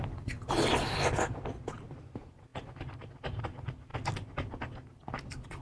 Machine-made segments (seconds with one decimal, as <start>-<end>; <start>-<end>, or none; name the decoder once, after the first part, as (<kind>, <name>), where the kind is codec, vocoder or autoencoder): none